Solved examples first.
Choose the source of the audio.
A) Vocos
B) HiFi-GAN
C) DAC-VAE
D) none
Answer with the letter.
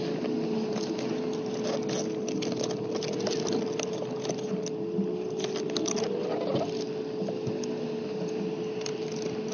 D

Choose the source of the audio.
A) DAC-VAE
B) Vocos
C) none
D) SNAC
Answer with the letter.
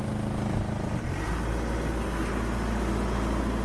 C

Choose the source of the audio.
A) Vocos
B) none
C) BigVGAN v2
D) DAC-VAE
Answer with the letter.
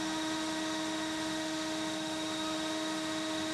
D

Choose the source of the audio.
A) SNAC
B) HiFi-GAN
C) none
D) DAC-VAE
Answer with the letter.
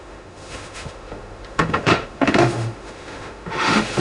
D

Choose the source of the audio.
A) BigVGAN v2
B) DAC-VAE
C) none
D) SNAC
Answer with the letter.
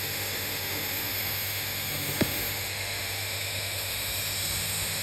B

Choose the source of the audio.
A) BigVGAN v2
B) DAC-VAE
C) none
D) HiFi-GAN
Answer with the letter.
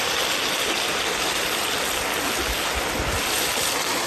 C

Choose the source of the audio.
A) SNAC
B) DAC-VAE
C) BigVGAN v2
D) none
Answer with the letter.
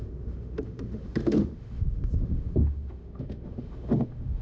B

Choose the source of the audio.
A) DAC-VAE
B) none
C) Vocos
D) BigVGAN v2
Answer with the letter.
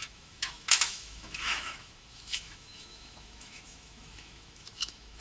A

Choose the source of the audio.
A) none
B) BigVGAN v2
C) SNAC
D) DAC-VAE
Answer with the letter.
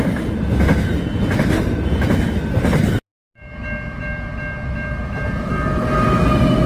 A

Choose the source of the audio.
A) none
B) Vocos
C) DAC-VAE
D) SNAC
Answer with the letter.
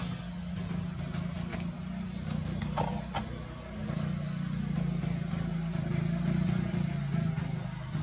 A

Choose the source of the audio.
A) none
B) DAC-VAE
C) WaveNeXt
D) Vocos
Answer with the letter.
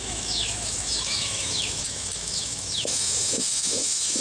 B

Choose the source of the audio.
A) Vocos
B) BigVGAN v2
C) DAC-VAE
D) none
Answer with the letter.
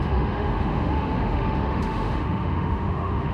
C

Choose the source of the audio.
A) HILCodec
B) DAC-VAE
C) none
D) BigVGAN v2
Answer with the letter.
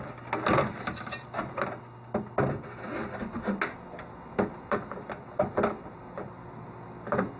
C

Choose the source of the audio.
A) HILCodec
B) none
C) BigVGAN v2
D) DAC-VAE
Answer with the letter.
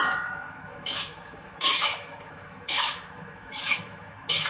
D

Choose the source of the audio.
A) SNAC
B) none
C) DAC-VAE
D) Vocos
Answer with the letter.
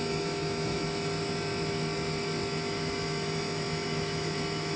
C